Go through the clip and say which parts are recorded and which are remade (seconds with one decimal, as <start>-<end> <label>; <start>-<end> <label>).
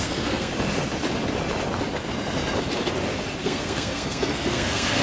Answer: 0.0-0.5 remade; 0.5-3.4 recorded; 3.4-5.0 remade